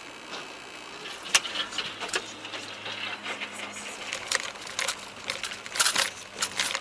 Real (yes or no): yes